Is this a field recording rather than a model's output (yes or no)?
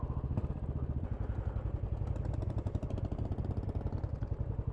yes